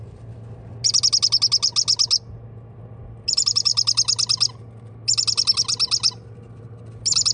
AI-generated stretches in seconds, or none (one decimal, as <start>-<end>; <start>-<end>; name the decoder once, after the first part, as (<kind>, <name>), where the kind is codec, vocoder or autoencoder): none